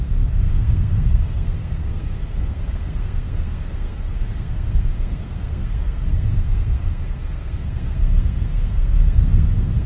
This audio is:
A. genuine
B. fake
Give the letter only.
B